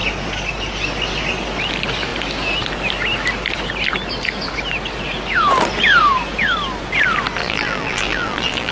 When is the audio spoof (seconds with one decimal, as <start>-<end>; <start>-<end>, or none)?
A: 7.4-8.7